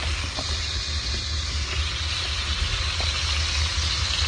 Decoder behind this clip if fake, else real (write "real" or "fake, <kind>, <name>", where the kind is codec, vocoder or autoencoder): real